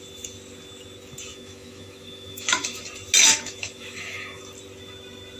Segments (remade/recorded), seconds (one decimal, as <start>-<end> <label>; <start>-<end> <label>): 0.0-1.3 recorded; 1.3-2.8 remade; 2.8-3.2 recorded; 3.2-4.4 remade; 4.4-5.4 recorded